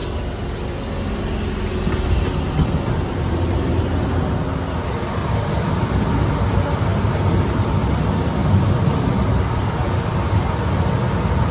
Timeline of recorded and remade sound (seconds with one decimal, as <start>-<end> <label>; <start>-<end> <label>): 0.0-5.2 recorded; 5.2-6.5 remade; 6.5-6.9 recorded; 6.9-8.6 remade; 8.6-11.5 recorded